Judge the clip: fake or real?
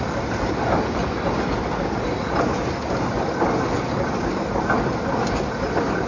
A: real